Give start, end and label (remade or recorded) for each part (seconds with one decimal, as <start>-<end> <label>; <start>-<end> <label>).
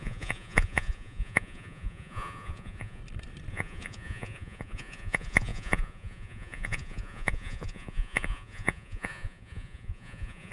0.0-3.0 remade; 3.0-3.5 recorded; 3.5-10.5 remade